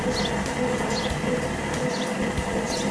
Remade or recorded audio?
recorded